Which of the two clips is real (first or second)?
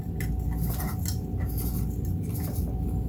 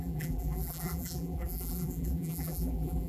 first